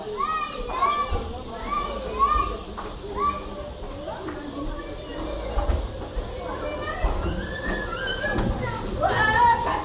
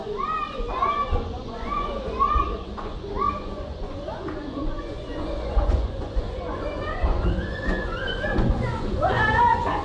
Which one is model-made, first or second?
second